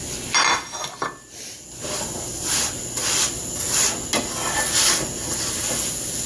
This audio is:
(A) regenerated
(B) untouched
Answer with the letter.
B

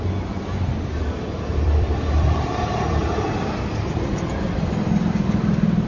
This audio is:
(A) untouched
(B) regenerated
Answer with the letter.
B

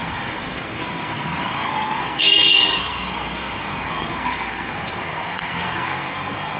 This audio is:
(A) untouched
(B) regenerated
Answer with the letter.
B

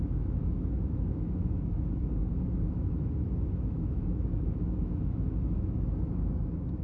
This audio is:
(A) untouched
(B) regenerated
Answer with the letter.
B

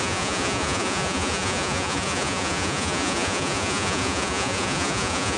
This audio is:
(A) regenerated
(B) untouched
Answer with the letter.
A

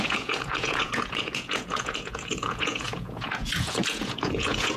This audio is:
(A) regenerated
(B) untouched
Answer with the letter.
A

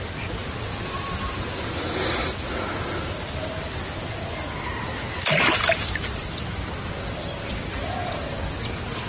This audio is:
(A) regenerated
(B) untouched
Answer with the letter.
B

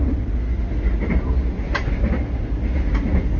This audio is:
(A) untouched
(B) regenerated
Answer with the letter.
A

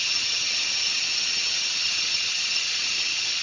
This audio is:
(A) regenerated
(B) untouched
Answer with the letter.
A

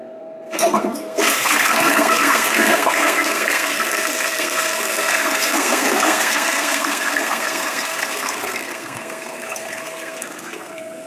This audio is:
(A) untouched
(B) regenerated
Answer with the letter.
B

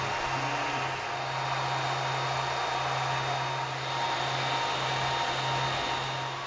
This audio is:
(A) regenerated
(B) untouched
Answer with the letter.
B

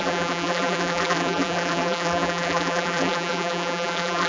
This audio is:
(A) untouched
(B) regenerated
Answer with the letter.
B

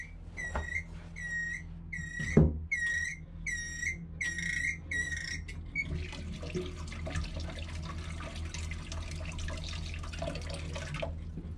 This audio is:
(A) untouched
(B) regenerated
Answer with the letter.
A